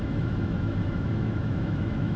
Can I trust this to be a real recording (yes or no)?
no